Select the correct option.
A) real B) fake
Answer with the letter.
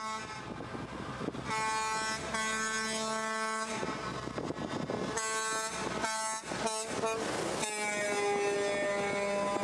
A